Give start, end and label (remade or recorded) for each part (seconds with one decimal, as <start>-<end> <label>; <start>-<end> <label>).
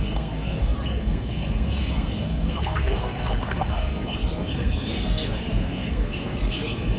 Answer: 0.0-7.0 remade